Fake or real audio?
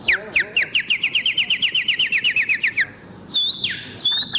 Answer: real